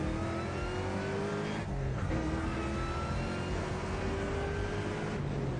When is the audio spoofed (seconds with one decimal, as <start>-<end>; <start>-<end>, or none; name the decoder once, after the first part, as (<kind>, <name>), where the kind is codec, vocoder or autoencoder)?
1.6-2.6 (codec, SNAC); 3.6-4.3